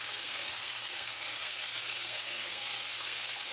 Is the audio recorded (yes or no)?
no